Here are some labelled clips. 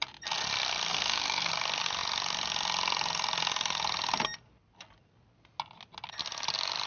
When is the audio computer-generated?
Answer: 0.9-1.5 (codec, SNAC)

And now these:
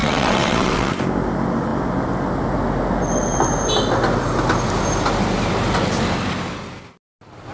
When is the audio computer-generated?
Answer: 0.0-0.9 (vocoder, WaveNeXt)

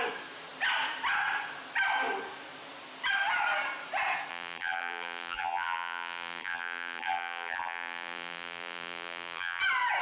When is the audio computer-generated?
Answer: 4.3-9.6 (vocoder, BigVGAN v2)

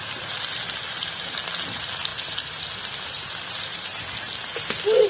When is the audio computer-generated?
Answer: none

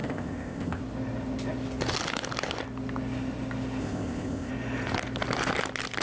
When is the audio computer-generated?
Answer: 0.0-0.8 (codec, ZipCodec); 3.8-4.5

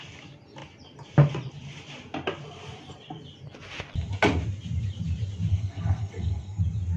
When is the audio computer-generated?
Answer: 5.5-6.6 (codec, SNAC)